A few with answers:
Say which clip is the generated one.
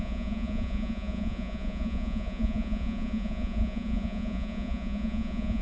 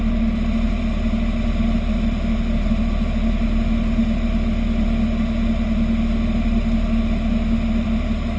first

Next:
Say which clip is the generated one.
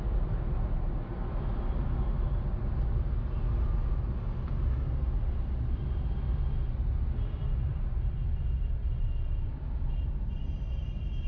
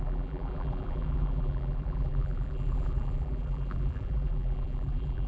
second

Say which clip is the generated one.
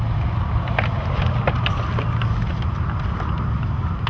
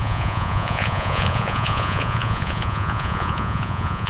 second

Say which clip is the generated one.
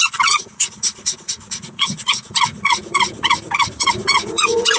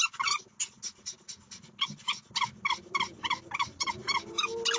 first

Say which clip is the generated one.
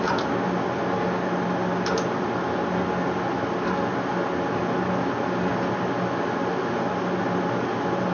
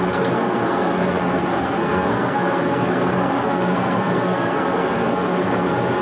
second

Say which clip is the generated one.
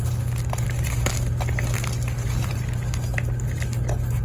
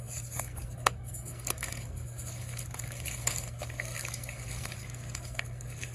second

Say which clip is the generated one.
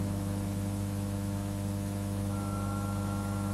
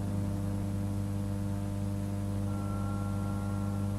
first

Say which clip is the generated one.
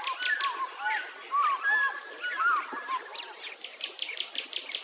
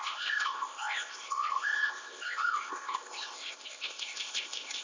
second